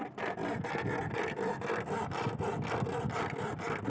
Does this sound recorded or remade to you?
recorded